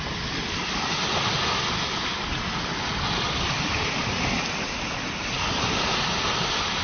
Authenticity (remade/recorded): recorded